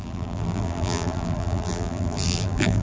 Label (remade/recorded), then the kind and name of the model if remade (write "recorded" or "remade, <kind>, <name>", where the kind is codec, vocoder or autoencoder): remade, vocoder, BigVGAN v2